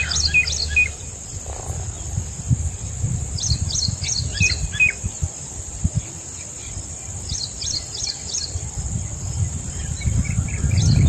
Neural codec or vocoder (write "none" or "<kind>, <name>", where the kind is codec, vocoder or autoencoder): none